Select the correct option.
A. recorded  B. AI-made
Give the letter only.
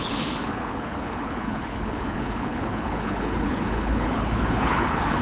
B